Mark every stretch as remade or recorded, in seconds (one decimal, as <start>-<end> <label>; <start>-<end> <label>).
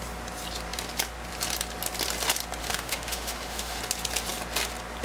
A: 0.0-2.6 recorded; 2.6-3.8 remade; 3.8-5.0 recorded